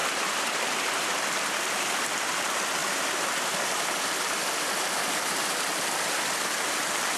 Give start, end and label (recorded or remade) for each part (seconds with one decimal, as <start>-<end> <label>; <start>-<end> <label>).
0.0-2.2 remade; 2.2-2.8 recorded; 2.8-6.0 remade; 6.0-7.2 recorded